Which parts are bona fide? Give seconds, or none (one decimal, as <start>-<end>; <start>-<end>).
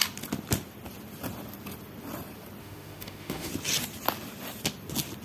0.0-2.6; 3.5-5.2